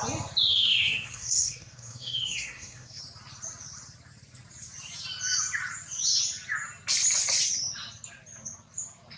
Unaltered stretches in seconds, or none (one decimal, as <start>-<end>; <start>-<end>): 0.0-0.5; 3.0-9.2